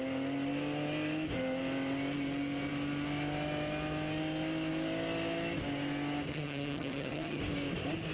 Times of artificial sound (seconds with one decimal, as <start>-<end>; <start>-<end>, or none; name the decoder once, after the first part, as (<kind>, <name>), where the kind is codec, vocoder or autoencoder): 6.3-7.4 (vocoder, HiFi-GAN)